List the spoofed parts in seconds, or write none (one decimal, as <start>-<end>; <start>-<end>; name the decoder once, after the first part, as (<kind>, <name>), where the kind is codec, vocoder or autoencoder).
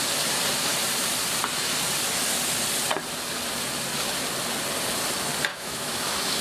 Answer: 5.5-6.4 (autoencoder, DAC-VAE)